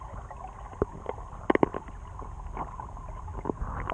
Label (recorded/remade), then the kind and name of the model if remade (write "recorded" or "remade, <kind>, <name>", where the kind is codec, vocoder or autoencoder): recorded